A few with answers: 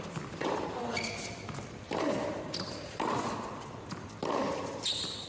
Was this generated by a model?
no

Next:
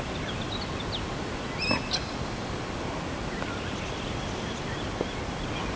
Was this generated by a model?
no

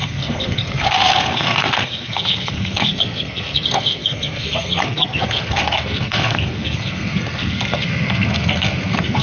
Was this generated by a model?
yes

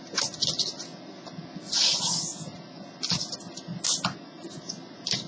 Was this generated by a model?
no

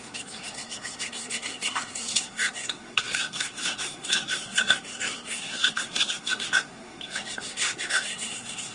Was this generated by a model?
yes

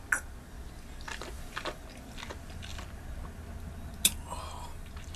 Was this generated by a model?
no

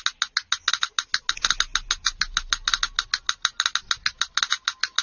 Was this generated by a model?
no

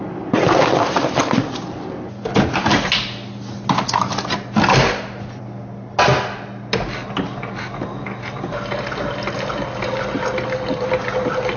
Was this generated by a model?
no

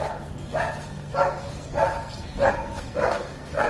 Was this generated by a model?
yes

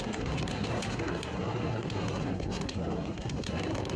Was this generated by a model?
yes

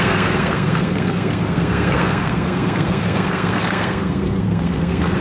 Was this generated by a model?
yes